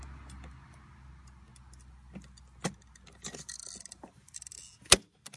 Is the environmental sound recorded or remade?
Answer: recorded